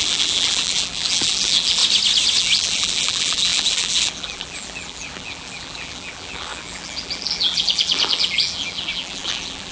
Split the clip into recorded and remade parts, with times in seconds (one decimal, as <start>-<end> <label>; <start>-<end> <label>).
0.0-1.8 remade; 1.8-2.4 recorded; 2.4-9.7 remade